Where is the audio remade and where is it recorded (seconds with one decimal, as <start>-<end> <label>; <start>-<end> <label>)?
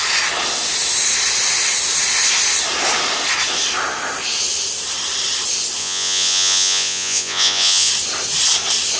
0.0-5.8 recorded; 5.8-7.9 remade; 7.9-9.0 recorded